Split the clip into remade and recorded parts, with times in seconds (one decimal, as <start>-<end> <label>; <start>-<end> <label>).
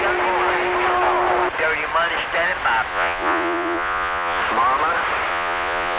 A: 0.0-2.9 recorded; 2.9-4.4 remade; 4.4-5.3 recorded; 5.3-6.0 remade